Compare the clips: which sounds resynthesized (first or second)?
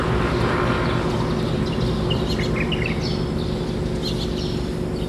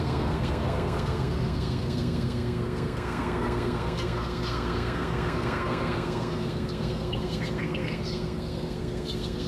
second